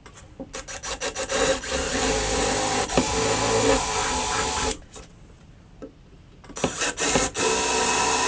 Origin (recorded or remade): recorded